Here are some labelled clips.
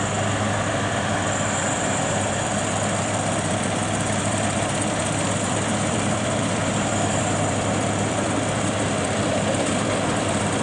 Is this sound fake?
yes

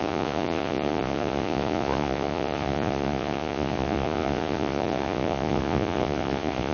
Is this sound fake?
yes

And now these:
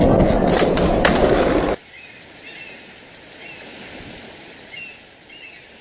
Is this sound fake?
no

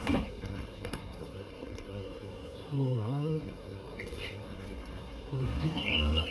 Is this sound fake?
yes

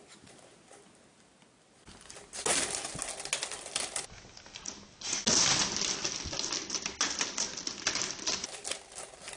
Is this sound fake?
no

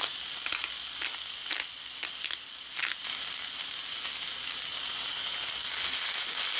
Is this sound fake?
no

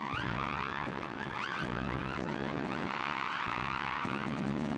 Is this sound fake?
yes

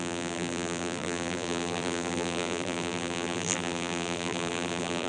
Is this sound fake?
yes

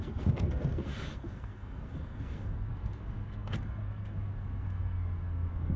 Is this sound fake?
yes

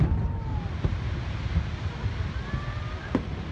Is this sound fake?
no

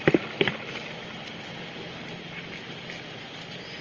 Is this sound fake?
no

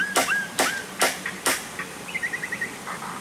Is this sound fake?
no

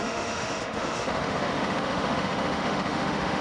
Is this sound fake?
yes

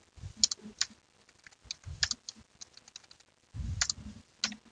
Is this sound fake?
no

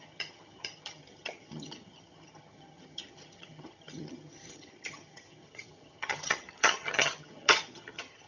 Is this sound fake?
yes